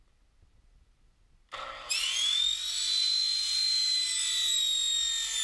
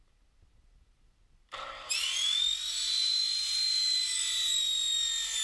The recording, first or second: first